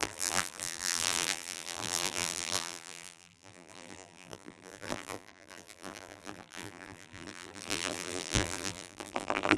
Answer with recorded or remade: remade